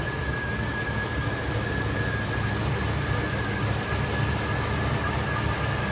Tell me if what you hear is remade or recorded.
recorded